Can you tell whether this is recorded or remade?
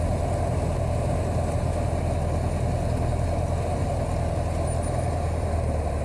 recorded